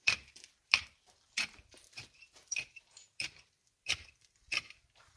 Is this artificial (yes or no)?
yes